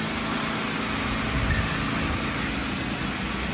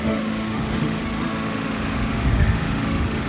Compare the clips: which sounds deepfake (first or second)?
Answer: second